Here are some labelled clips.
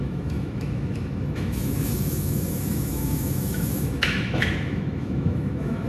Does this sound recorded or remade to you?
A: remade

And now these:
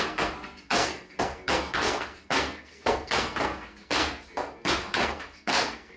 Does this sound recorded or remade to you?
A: remade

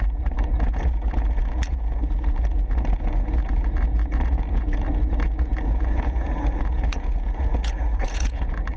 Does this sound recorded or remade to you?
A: remade